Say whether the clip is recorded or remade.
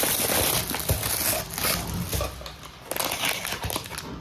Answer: recorded